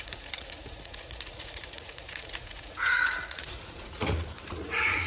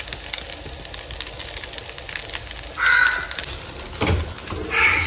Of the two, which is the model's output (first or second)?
first